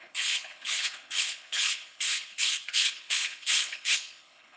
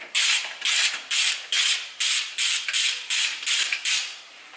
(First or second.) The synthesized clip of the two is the first